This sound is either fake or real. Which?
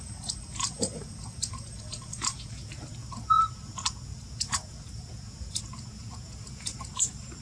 fake